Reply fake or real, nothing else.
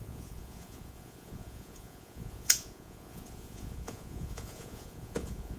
fake